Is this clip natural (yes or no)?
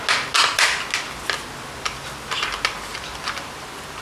yes